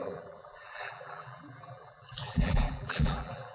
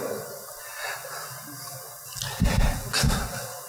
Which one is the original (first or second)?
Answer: second